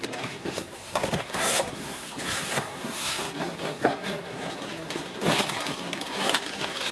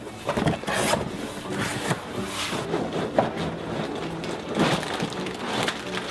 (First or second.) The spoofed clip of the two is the first